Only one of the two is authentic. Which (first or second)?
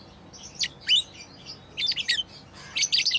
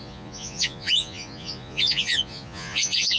first